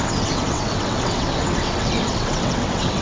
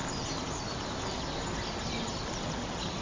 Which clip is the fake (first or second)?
first